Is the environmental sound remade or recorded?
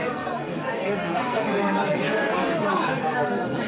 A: remade